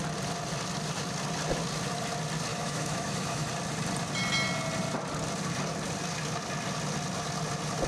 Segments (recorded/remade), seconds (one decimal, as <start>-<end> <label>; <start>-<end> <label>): 0.0-2.5 recorded; 2.5-3.5 remade; 3.5-7.9 recorded